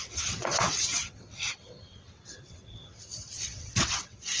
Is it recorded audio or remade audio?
remade